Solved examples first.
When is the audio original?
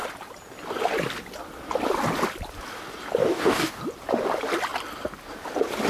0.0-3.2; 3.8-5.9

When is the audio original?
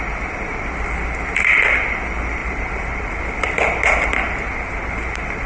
0.0-2.4; 3.2-5.5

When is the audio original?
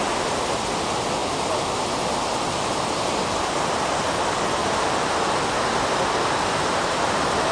0.0-7.5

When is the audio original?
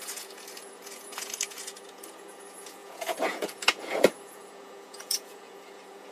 none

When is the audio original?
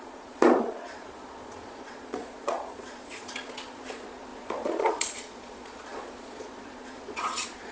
none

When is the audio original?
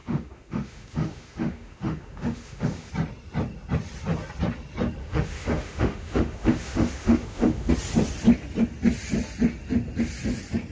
2.9-5.0; 7.7-10.7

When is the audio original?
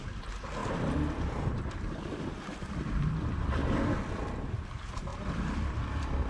0.0-5.1